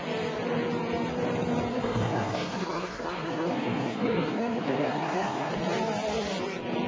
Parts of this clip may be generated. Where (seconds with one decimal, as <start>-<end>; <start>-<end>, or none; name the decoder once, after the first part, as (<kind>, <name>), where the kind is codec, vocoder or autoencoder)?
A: 1.7-5.5 (codec, SNAC)